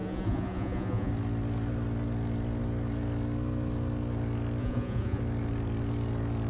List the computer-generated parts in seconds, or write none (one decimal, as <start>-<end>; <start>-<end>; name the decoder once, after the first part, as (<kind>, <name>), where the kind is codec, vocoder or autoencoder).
0.0-1.1 (vocoder, Vocos); 4.6-5.2